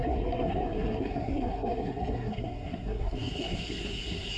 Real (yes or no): no